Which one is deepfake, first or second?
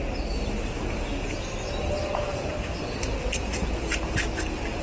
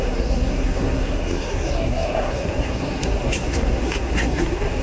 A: second